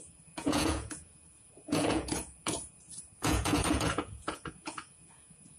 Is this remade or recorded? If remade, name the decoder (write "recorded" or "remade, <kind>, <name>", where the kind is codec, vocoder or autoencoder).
remade, vocoder, Vocos